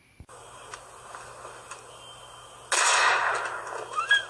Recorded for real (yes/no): yes